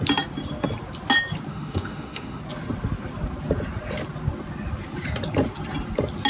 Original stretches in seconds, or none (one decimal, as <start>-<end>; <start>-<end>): 0.0-1.5; 2.4-6.3